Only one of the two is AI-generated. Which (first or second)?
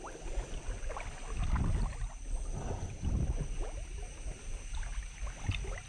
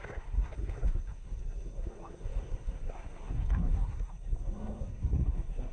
second